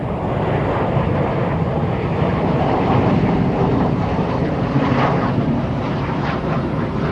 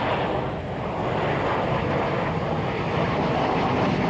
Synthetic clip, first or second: first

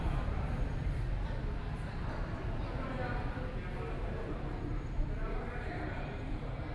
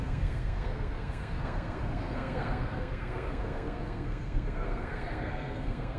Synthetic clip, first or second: second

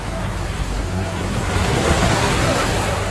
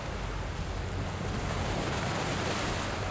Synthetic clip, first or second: first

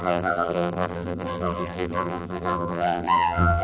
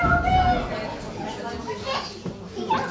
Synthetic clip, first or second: first